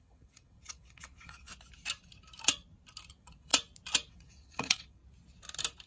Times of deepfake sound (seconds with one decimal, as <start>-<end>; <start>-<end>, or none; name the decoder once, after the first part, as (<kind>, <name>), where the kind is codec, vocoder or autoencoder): 0.0-1.5 (vocoder, WaveNeXt); 3.1-3.5; 4.1-5.0